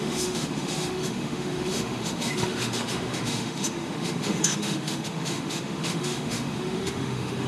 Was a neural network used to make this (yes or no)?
yes